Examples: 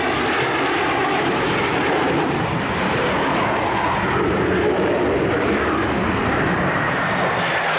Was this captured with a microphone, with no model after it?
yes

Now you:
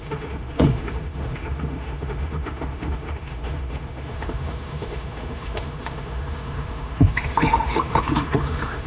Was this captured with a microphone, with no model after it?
no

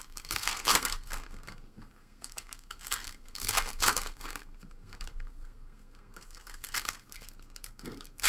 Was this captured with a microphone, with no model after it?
no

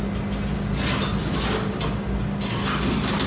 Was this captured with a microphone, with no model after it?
yes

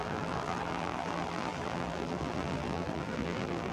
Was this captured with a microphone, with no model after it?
no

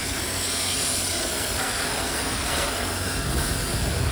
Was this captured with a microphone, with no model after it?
no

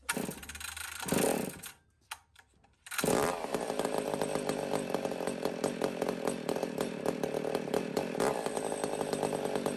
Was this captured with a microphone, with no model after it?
yes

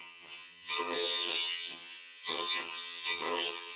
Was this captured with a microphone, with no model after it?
no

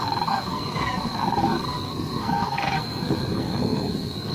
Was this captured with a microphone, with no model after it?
no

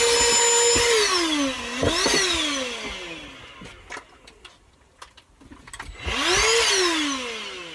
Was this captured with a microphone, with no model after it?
yes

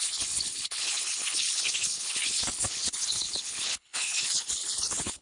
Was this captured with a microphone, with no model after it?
no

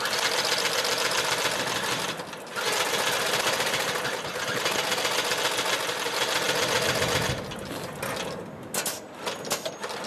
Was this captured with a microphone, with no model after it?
yes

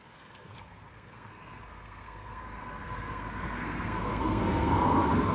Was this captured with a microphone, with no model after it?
no